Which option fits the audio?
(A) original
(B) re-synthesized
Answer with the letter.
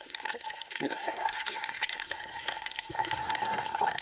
B